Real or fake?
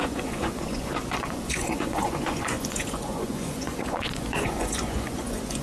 fake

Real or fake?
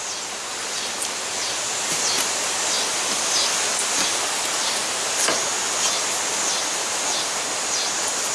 real